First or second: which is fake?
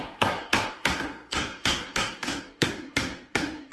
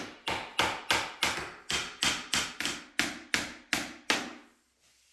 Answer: first